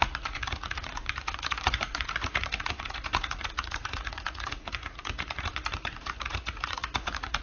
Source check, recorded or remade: remade